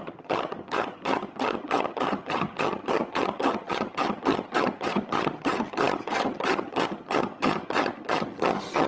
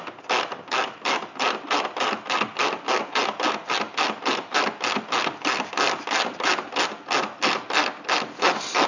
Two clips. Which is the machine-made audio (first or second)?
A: first